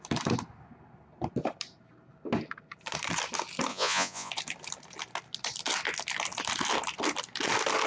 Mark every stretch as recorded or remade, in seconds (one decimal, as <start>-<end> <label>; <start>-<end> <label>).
0.0-3.7 recorded; 3.7-4.3 remade; 4.3-7.9 recorded